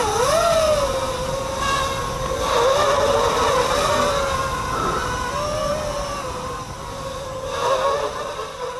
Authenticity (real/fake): real